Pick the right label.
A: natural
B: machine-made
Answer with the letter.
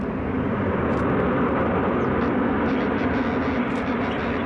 A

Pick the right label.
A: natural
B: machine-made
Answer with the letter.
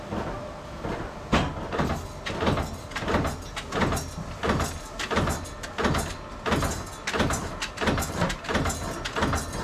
A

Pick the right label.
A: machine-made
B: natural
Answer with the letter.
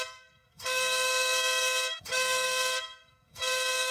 A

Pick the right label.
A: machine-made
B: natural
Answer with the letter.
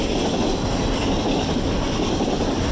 B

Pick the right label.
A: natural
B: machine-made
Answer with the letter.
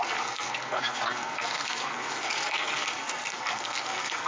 B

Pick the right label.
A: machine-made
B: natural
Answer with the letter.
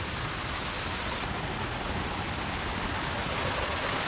B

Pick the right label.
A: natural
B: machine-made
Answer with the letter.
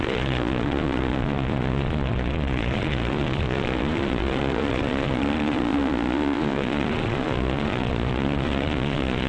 B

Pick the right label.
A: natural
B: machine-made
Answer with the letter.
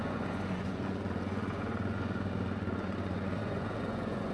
B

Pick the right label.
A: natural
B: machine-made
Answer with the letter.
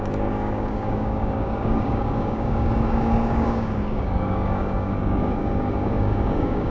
B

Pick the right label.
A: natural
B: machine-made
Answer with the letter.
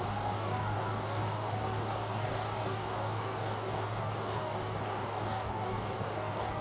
B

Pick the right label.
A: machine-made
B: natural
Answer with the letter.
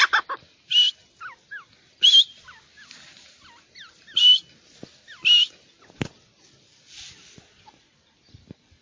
B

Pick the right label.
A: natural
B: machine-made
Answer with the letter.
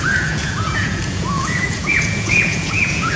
B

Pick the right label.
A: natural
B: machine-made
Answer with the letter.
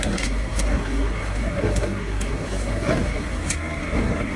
B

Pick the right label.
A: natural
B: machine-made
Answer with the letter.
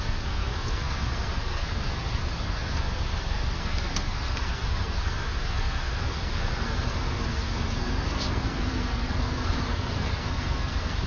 B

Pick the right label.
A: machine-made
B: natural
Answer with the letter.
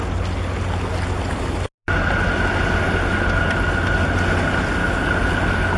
B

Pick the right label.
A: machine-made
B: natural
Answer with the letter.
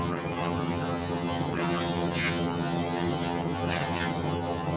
A